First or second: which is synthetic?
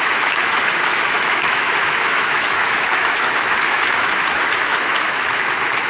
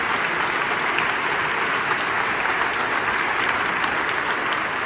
first